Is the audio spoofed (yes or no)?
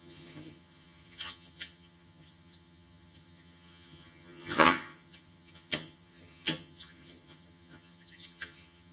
yes